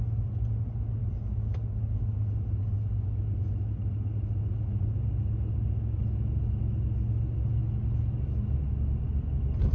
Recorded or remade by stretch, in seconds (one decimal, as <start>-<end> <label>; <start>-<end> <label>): 0.0-9.7 recorded